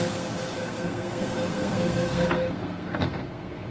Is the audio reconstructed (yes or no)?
yes